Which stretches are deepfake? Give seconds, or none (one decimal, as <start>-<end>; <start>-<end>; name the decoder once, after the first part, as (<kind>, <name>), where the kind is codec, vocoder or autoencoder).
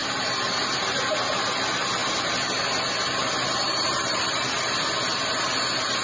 0.0-1.0 (vocoder, BigVGAN v2); 2.0-5.3